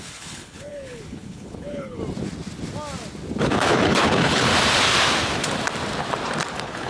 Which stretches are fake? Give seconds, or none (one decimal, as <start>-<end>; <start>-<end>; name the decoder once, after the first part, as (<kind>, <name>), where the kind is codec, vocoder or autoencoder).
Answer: 0.0-2.0 (codec, HILCodec); 3.4-4.5; 6.5-6.9